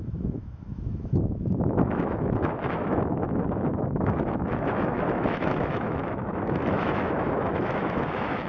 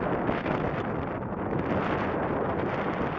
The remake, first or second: first